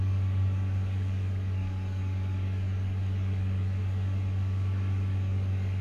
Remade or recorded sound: remade